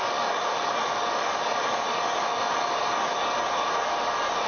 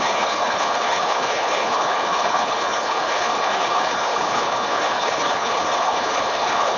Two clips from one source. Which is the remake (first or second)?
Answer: second